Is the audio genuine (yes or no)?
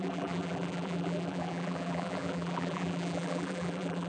no